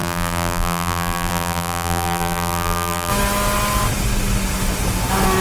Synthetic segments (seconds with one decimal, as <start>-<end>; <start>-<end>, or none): 0.0-3.1